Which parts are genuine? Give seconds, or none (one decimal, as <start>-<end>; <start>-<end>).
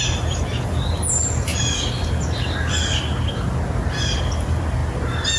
0.0-5.4